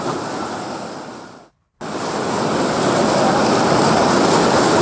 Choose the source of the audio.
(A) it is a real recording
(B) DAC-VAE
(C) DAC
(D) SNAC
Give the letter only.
A